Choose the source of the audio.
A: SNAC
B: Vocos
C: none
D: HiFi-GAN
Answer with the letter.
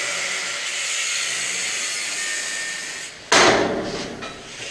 C